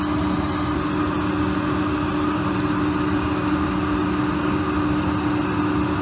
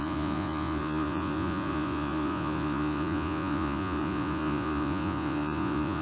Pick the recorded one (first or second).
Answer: first